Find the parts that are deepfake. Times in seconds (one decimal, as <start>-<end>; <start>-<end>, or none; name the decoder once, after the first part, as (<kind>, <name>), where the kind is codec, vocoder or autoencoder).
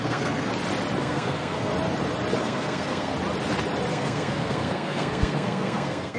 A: 0.0-0.5 (codec, SNAC); 1.0-1.7; 2.4-3.1; 3.9-6.2